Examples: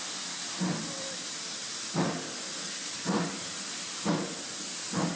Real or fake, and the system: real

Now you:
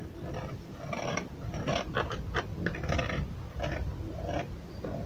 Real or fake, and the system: real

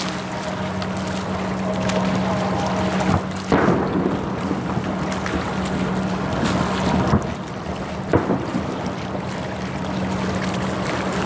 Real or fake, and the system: real